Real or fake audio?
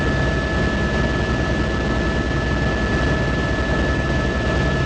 real